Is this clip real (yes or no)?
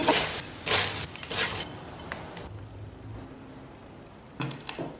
yes